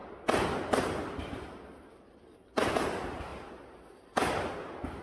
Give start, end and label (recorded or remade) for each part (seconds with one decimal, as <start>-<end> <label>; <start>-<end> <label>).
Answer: 0.0-0.8 recorded; 0.8-3.3 remade; 3.3-4.5 recorded; 4.5-5.0 remade